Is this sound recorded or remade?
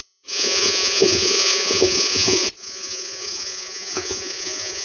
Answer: remade